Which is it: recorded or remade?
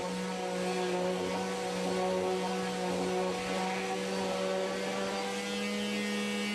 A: recorded